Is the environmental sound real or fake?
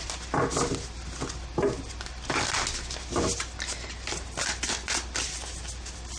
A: real